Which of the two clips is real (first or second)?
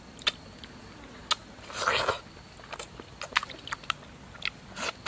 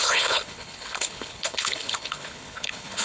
first